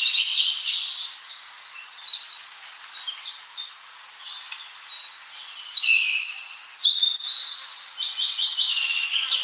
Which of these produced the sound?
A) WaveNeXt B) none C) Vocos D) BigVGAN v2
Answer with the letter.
B